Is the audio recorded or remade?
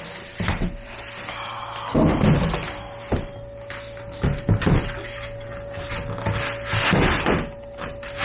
recorded